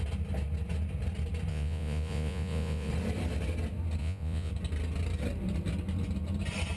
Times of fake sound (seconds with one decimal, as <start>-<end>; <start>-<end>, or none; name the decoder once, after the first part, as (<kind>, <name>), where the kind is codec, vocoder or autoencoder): 1.5-2.9 (vocoder, Vocos); 4.0-4.5